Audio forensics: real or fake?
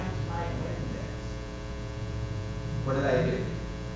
fake